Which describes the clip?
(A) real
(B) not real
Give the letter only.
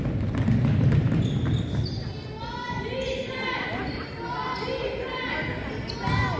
A